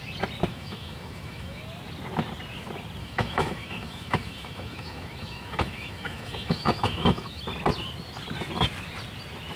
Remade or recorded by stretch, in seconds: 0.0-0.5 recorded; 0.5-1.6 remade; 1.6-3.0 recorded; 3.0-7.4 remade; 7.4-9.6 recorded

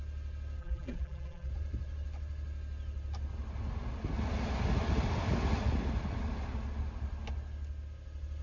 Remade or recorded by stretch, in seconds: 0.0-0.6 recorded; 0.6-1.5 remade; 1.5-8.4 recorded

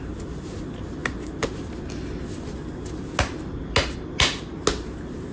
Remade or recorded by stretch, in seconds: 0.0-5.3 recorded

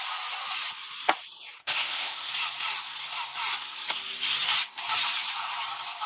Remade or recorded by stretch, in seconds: 0.0-1.6 recorded; 1.6-2.3 remade; 2.3-6.1 recorded

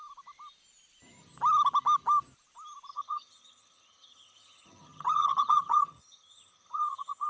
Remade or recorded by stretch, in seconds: 0.0-2.9 recorded; 2.9-7.3 remade

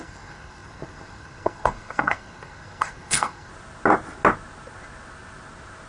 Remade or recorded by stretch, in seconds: 0.0-3.5 remade; 3.5-5.9 recorded

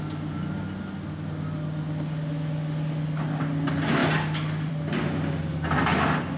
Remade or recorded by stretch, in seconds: 0.0-6.4 recorded

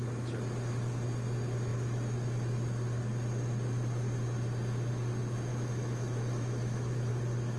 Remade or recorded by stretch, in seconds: 0.0-5.5 recorded; 5.5-7.1 remade; 7.1-7.6 recorded